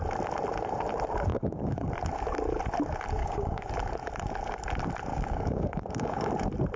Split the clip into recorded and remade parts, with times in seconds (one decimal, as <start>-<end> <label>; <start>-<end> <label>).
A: 0.0-1.3 recorded; 1.3-1.9 remade; 1.9-3.2 recorded; 3.2-3.7 remade; 3.7-5.1 recorded; 5.1-6.3 remade; 6.3-6.8 recorded